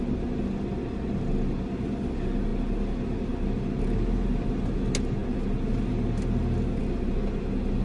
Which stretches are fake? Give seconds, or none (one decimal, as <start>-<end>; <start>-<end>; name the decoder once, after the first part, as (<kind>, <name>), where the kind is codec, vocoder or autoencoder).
none

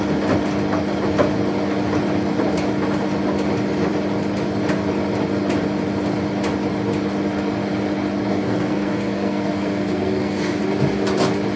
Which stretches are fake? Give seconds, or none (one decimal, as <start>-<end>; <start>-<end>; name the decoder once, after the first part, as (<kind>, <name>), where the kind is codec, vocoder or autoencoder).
8.3-10.6 (codec, SNAC)

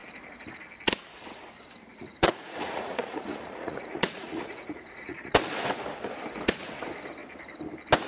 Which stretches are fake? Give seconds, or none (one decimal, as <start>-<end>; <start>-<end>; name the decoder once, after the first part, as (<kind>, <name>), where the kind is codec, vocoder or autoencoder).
1.9-5.4 (vocoder, Vocos)

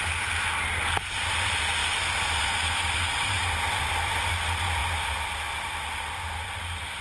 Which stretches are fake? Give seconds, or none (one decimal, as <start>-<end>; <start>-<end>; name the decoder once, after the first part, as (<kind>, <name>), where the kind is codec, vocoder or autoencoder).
none